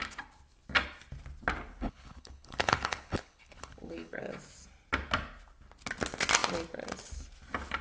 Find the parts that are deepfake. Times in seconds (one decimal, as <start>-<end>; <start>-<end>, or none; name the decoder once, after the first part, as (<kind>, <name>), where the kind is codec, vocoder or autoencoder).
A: 1.8-4.2 (codec, HILCodec)